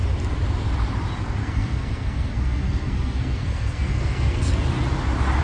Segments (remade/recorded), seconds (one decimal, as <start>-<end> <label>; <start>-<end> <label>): 0.0-1.4 recorded; 1.4-4.6 remade; 4.6-5.4 recorded